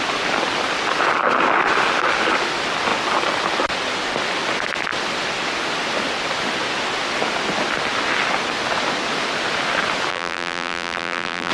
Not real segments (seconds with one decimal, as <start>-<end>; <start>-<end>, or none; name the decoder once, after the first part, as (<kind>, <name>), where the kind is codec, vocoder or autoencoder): 10.1-11.5 (vocoder, BigVGAN v2)